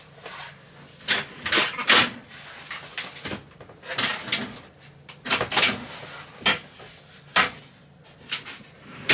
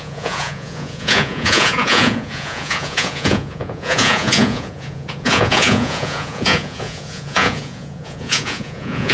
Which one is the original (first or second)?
first